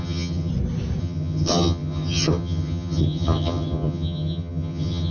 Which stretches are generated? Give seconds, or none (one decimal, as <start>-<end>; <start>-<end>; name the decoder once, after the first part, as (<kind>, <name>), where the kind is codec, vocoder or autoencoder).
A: 0.0-0.5 (vocoder, HiFi-GAN); 1.0-5.1